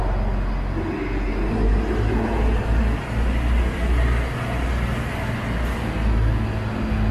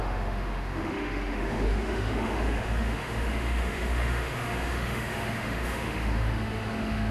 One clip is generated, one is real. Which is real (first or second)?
first